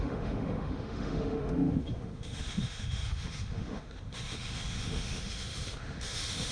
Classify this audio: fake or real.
fake